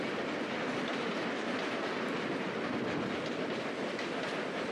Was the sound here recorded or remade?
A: recorded